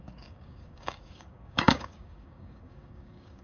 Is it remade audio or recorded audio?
remade